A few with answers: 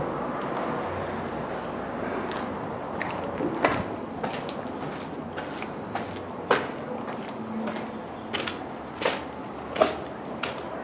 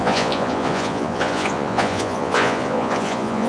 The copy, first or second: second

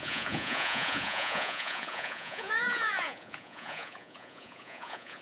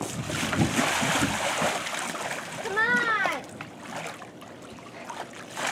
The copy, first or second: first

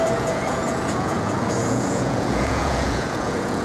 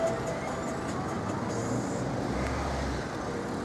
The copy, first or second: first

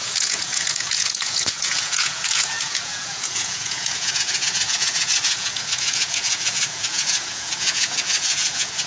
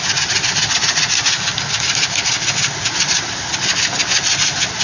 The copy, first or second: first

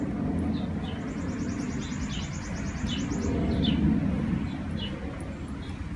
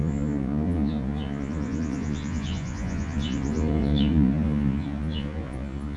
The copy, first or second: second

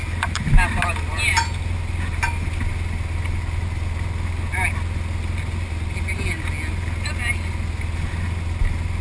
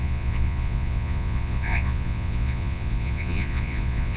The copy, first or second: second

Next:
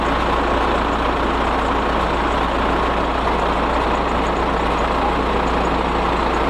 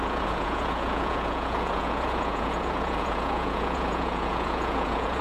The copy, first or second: second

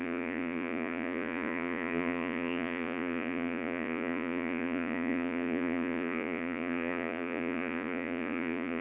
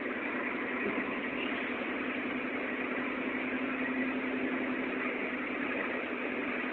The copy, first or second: first